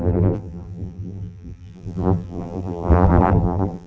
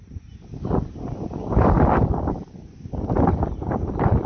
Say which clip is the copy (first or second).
first